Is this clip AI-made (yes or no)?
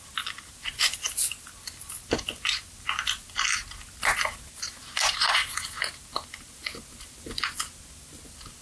no